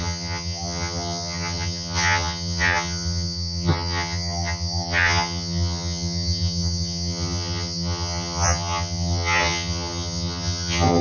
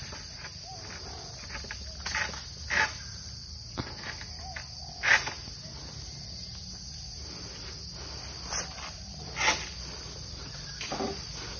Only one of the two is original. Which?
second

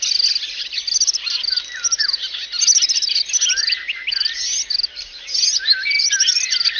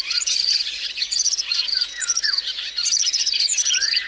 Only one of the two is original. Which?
first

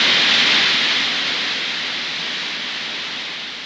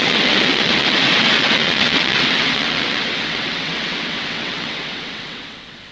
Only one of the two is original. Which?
first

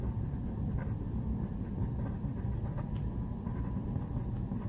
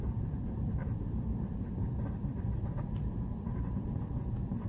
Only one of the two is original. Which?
first